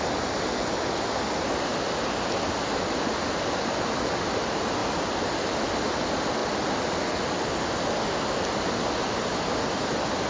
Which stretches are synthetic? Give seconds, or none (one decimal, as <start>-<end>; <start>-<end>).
4.8-5.6